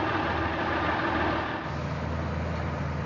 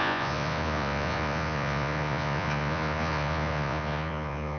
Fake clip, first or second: second